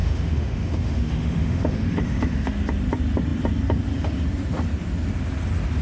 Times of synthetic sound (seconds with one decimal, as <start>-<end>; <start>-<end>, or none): 0.0-2.5

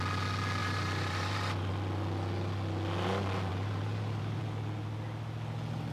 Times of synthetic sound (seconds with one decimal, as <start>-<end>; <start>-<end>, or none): 0.6-1.7; 3.5-4.4

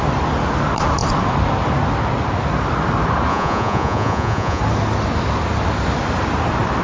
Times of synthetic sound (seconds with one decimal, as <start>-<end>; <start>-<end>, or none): 3.3-4.6